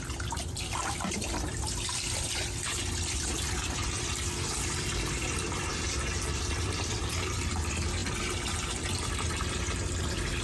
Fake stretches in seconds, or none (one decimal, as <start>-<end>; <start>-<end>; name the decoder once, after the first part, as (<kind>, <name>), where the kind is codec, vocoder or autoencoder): 0.0-10.4 (vocoder, BigVGAN v2)